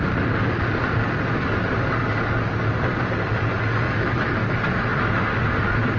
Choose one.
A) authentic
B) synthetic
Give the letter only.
A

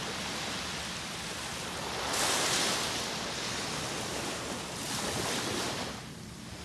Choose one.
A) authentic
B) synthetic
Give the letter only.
A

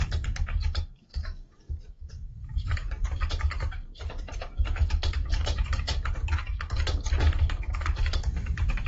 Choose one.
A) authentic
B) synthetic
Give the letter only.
B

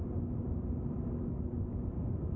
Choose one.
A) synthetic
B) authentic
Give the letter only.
B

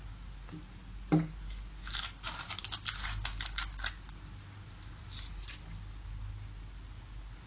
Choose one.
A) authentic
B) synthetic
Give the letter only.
A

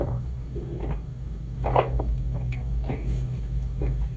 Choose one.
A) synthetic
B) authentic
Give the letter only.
A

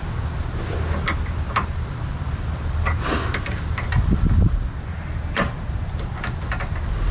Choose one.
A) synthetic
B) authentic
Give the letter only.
B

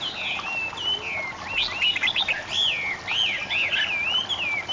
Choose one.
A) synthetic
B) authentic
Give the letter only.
B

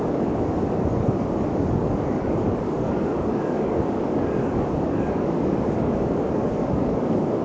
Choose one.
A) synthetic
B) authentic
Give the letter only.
A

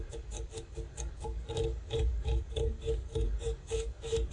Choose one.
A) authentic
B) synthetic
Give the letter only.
B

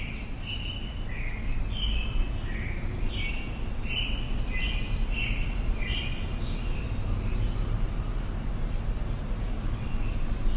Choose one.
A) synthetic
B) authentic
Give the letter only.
B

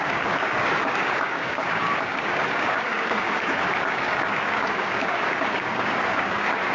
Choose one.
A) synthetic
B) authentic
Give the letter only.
A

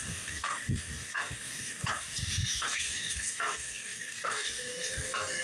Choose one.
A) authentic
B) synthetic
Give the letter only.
B